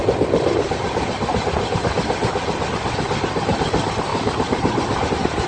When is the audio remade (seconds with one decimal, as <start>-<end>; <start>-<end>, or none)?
4.1-5.1